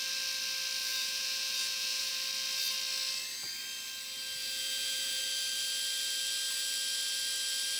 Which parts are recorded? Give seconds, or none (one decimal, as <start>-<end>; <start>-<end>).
0.0-0.8; 2.1-4.4; 5.2-7.8